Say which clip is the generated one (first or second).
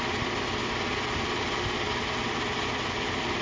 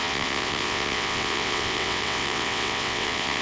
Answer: second